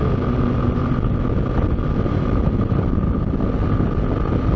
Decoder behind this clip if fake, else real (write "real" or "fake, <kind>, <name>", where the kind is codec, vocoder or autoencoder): real